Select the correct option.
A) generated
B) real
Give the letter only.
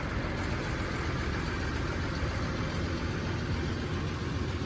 B